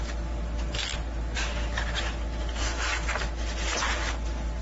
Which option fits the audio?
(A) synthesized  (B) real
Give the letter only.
B